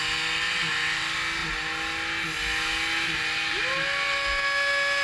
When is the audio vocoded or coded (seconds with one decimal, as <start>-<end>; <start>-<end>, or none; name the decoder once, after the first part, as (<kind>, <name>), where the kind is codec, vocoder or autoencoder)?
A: none